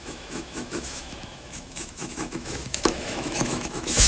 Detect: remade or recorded remade